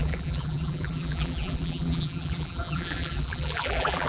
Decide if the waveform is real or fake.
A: fake